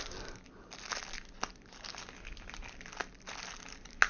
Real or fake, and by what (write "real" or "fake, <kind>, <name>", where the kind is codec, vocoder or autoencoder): real